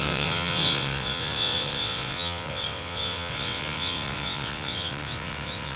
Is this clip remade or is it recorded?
remade